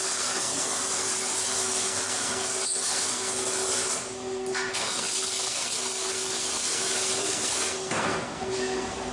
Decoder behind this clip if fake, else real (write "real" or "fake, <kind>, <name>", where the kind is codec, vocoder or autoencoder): fake, codec, SNAC